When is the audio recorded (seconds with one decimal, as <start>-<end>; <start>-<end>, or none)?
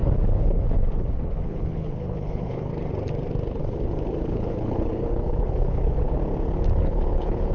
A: 2.7-3.6; 6.2-6.8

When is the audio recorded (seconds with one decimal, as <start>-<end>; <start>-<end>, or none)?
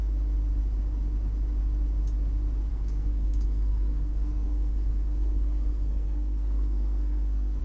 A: 0.0-2.7